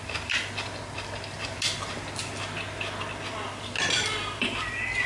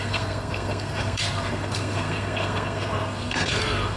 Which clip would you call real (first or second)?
first